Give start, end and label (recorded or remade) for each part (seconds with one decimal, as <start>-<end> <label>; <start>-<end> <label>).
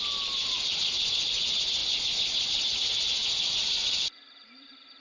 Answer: 0.0-0.4 recorded; 0.4-1.2 remade; 1.2-1.8 recorded; 1.8-5.0 remade